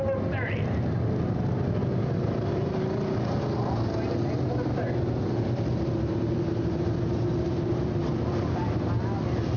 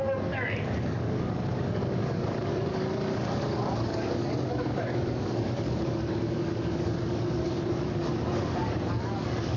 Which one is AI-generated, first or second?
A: second